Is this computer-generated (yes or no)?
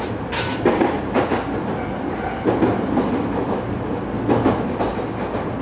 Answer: no